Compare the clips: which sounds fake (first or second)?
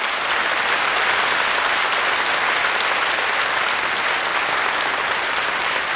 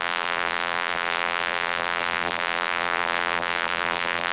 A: second